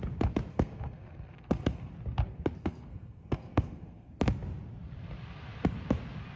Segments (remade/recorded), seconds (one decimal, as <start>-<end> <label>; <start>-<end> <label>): 0.0-0.5 recorded; 0.5-1.9 remade; 1.9-2.6 recorded; 2.6-4.1 remade; 4.1-6.4 recorded